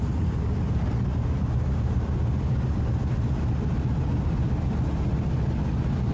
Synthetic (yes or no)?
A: no